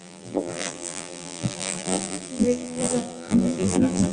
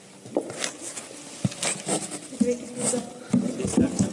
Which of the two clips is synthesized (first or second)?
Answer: first